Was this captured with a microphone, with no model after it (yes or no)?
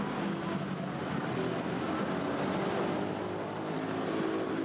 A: yes